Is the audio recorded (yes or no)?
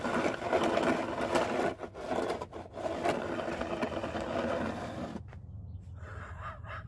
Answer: yes